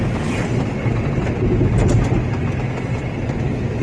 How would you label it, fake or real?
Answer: real